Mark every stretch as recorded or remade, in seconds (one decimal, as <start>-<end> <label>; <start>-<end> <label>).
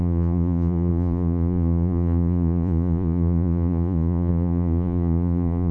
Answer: 0.0-5.7 remade